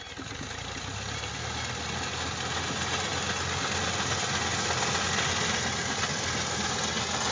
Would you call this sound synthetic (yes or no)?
no